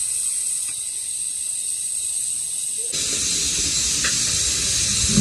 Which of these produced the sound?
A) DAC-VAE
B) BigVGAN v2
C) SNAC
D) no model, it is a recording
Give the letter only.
D